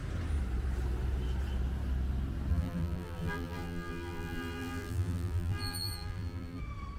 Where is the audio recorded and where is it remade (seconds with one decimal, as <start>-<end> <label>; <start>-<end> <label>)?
0.0-2.5 recorded; 2.5-6.6 remade; 6.6-7.0 recorded